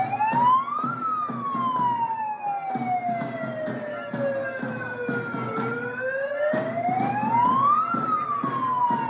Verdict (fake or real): real